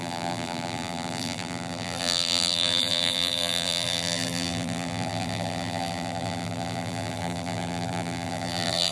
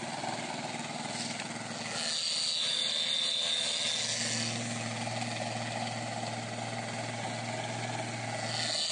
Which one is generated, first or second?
first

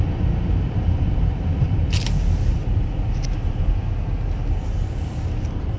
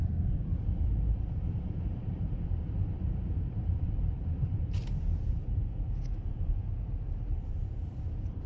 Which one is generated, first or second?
second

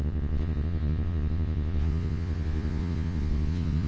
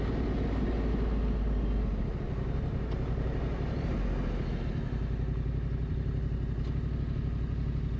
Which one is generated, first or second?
first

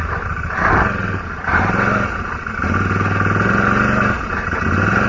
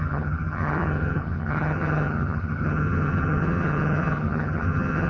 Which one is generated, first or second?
second